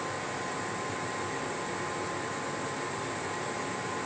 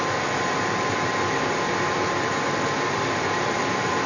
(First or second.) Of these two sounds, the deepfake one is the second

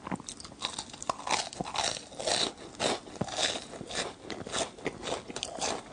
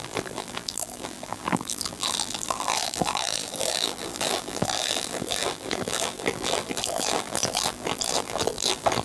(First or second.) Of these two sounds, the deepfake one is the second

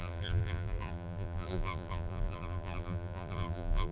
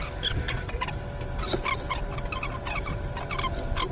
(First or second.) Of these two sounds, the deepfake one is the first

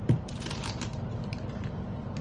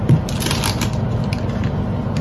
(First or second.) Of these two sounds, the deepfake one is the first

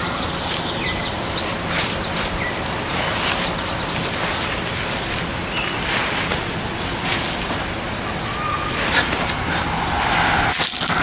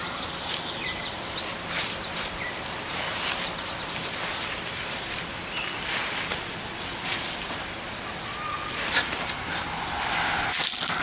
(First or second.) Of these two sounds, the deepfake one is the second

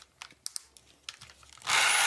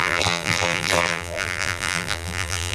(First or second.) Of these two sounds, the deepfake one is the second